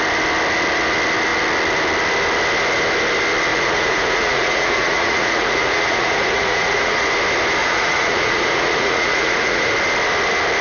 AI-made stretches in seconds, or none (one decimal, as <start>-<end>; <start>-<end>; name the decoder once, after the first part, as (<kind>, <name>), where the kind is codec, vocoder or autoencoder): 3.5-7.1 (vocoder, Vocos); 7.6-9.7